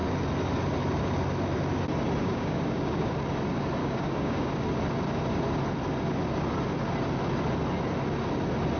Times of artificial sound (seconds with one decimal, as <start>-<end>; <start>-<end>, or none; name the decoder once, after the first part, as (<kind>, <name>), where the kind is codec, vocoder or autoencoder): 2.2-3.1 (codec, DAC); 3.8-4.5